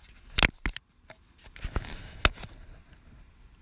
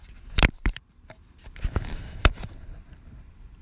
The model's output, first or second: second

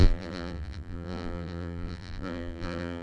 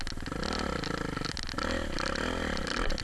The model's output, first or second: first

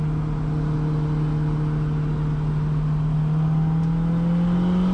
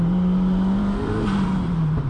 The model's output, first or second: second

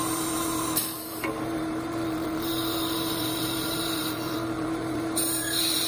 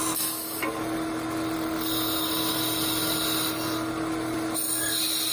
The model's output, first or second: first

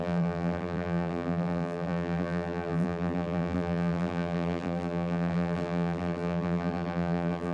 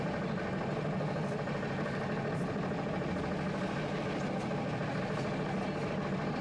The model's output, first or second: first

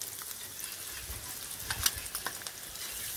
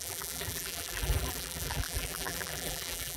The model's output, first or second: second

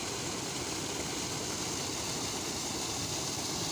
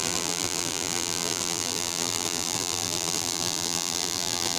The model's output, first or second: second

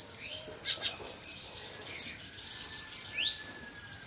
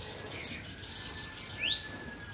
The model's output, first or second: first